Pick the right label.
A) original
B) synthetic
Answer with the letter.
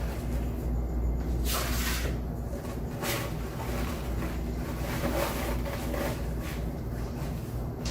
A